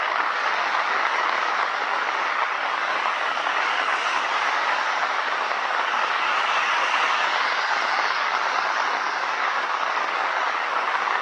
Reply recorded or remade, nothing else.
remade